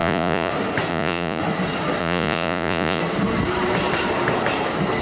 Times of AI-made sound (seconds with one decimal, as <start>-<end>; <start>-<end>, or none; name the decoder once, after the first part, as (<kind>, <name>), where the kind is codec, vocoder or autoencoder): 0.0-0.5 (vocoder, Vocos); 0.9-1.4; 2.0-3.0